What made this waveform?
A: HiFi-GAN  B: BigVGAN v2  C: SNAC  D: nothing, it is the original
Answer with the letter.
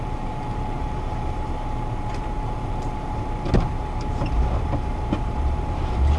B